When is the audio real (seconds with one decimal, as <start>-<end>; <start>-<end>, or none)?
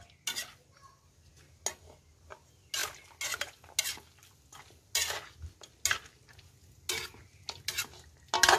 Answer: 0.0-8.6